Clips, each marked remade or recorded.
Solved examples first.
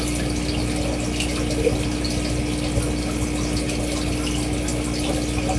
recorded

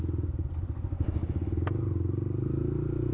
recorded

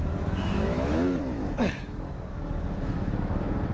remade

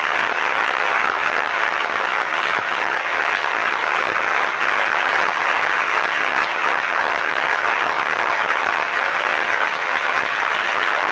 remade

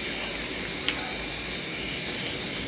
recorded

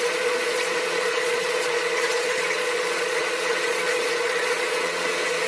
remade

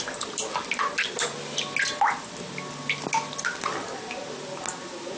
recorded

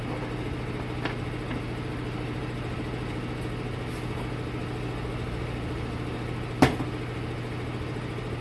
recorded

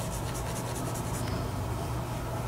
recorded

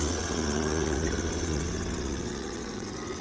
remade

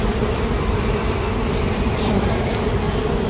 recorded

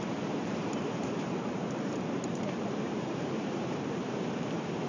remade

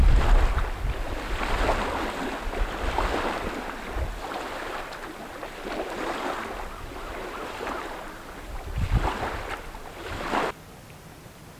recorded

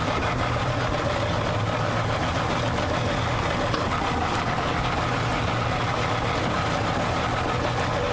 recorded